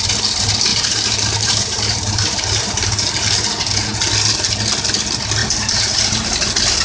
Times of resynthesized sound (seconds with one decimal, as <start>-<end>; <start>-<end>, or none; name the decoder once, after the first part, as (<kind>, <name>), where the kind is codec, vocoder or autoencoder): 0.7-3.1 (vocoder, BigVGAN v2); 5.4-6.3

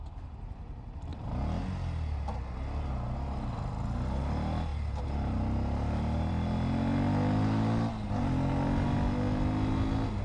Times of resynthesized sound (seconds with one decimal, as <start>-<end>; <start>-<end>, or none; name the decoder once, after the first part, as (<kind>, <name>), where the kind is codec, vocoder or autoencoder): none

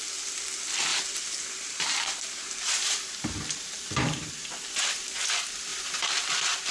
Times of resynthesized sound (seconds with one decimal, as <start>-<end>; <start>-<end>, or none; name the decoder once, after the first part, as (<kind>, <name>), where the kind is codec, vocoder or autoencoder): 0.9-4.3 (vocoder, BigVGAN v2); 5.7-6.3

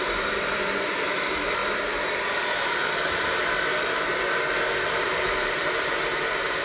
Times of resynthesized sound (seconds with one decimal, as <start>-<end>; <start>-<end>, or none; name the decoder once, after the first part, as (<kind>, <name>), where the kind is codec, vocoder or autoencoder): 0.0-1.6 (vocoder, BigVGAN v2); 5.1-6.6

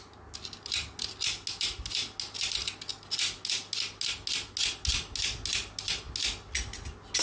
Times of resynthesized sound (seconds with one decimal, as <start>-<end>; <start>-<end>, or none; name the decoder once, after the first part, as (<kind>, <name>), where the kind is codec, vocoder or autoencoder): none

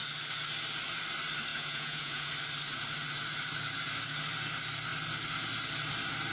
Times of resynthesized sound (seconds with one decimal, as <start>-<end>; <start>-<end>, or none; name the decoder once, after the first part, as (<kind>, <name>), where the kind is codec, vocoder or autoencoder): 1.5-2.3 (vocoder, Vocos)

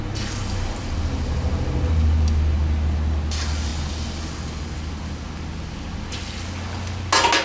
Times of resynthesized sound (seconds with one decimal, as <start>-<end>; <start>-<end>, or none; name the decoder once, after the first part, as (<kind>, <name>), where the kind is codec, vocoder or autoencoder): none

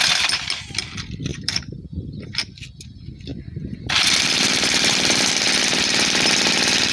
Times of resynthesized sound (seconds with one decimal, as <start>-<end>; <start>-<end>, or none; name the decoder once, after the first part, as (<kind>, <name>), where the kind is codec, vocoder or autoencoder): 1.3-2.4 (vocoder, BigVGAN v2)